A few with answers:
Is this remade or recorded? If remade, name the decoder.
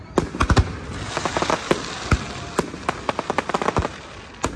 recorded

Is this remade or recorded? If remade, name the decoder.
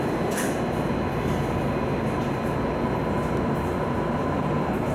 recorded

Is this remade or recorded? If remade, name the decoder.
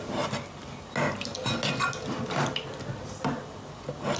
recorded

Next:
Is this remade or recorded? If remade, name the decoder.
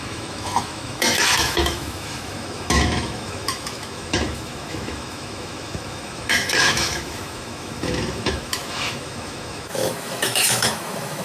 remade, autoencoder, DAC-VAE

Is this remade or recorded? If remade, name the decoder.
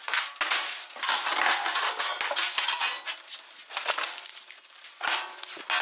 recorded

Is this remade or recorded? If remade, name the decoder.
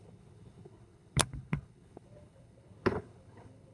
remade, codec, HILCodec